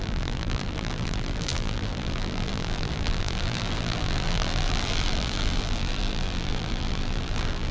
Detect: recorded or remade remade